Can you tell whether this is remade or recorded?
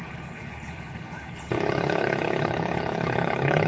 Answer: remade